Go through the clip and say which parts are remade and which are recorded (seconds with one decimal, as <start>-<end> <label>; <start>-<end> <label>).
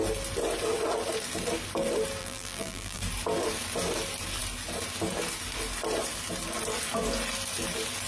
0.0-2.2 recorded; 2.2-3.0 remade; 3.0-8.1 recorded